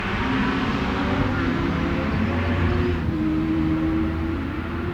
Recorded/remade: recorded